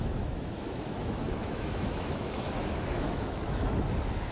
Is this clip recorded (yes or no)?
no